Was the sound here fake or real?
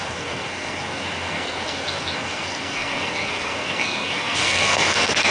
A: fake